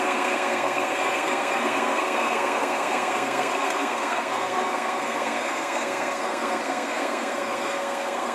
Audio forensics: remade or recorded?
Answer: remade